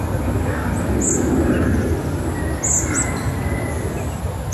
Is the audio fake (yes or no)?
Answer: no